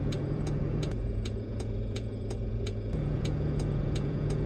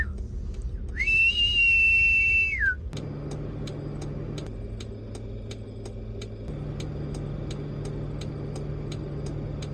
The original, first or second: second